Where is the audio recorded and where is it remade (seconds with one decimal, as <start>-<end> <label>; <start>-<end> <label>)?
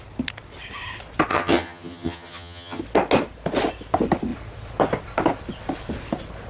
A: 0.0-1.3 recorded; 1.3-2.8 remade; 2.8-6.5 recorded